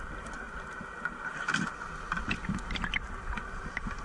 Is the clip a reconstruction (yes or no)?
no